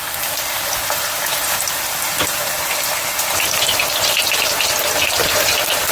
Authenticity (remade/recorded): recorded